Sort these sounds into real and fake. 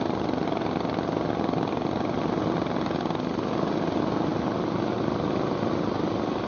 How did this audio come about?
real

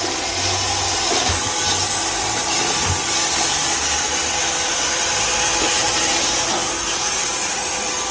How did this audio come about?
real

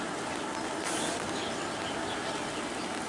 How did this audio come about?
real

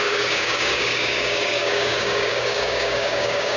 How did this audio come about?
fake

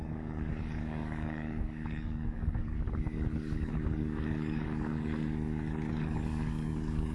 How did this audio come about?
fake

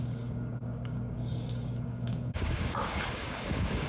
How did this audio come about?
fake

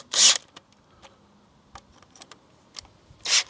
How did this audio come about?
real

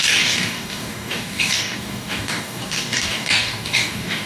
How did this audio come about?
fake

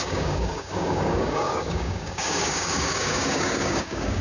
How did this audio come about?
fake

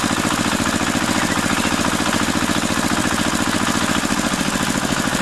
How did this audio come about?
real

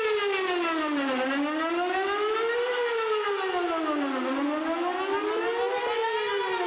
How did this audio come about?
real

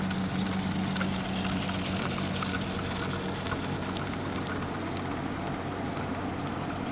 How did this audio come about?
real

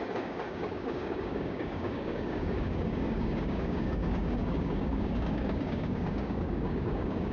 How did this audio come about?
fake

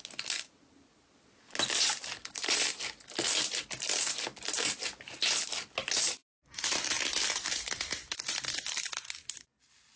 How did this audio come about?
real